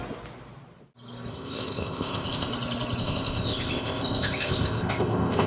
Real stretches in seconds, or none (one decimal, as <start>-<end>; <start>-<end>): 0.0-1.3; 2.5-3.0